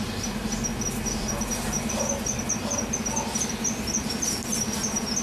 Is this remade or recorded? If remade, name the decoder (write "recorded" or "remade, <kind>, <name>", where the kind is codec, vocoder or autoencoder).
recorded